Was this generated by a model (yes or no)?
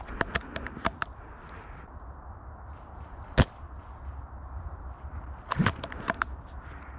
no